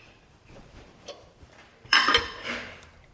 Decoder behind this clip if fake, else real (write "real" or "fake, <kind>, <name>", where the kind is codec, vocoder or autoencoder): fake, vocoder, BigVGAN v2